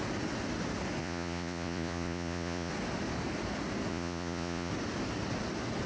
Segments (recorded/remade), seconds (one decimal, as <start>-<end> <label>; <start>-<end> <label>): 0.0-1.0 recorded; 1.0-2.7 remade; 2.7-3.9 recorded; 3.9-4.7 remade; 4.7-5.9 recorded